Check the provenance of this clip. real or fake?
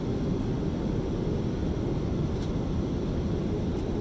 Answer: real